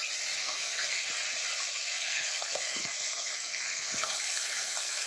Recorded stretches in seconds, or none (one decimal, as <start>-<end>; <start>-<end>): 0.0-0.4; 1.1-1.7